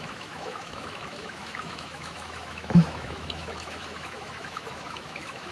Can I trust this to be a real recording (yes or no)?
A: no